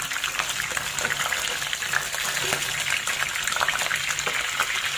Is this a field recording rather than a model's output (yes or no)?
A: yes